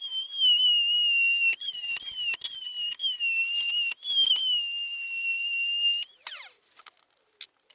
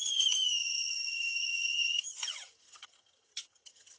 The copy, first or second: second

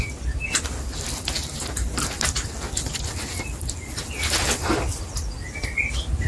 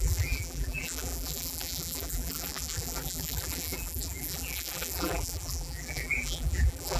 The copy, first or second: second